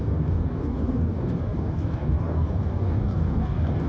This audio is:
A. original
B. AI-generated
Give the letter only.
B